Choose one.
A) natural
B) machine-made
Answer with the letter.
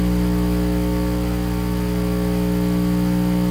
A